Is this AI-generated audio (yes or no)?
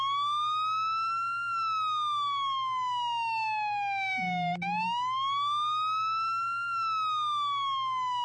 no